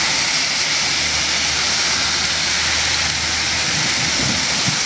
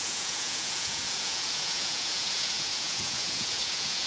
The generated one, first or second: second